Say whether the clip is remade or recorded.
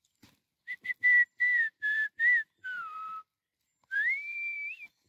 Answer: remade